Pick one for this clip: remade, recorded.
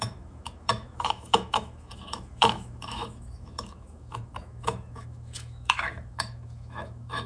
remade